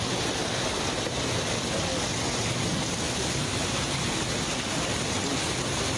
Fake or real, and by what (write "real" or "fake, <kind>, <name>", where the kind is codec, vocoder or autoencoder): real